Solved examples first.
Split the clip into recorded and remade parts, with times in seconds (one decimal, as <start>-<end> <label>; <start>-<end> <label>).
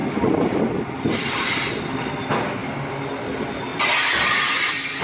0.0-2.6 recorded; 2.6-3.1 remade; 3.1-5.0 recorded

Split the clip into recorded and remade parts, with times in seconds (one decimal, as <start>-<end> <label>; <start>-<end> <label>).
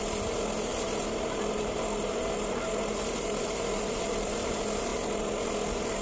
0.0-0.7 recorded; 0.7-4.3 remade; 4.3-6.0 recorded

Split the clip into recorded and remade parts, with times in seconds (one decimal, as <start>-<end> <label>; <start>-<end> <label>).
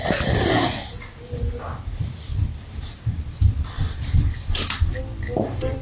0.0-2.3 recorded; 2.3-5.8 remade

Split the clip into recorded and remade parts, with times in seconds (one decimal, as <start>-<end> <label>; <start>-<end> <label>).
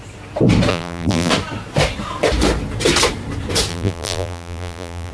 0.0-0.7 recorded; 0.7-1.3 remade; 1.3-3.7 recorded; 3.7-5.1 remade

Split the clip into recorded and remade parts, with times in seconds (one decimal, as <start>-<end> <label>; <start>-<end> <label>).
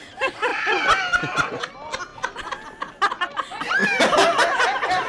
0.0-3.8 recorded; 3.8-5.1 remade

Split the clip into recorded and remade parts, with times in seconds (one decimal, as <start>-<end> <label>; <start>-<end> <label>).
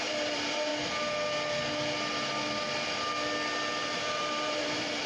0.0-0.7 remade; 0.7-3.8 recorded; 3.8-5.1 remade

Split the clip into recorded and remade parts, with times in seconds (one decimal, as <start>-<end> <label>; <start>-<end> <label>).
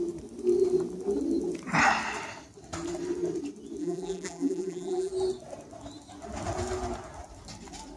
0.0-3.8 recorded; 3.8-5.1 remade; 5.1-8.0 recorded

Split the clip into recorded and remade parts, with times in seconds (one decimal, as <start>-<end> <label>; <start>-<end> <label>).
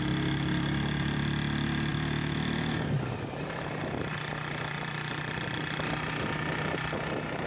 0.0-1.9 recorded; 1.9-3.6 remade; 3.6-7.5 recorded